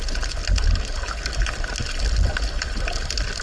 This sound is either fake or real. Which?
real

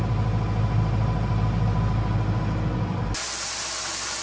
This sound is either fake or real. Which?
real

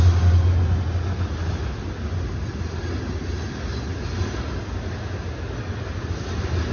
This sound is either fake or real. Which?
real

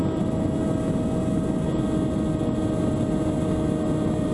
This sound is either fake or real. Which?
real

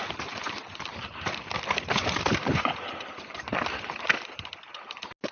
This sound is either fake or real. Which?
real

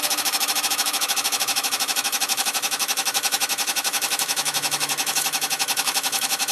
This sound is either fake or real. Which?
fake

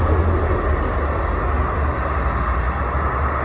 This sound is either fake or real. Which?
real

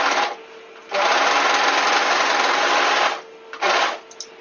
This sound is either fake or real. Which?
real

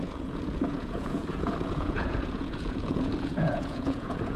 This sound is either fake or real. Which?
fake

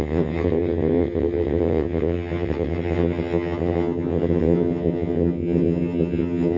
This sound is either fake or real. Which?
fake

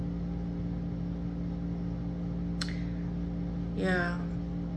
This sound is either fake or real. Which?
real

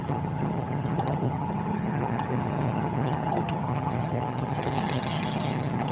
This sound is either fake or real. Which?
fake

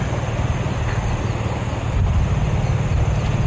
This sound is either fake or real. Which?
real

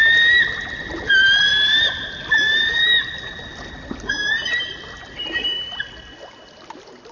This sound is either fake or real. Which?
real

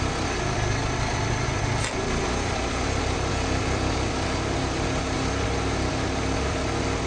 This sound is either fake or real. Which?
real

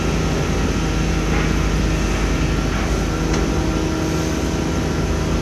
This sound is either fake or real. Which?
real